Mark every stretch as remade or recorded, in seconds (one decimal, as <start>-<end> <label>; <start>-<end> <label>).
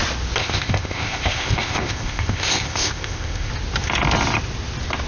0.0-0.4 recorded; 0.4-3.5 remade; 3.5-5.1 recorded